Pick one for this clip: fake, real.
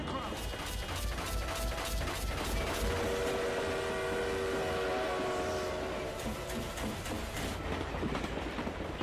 real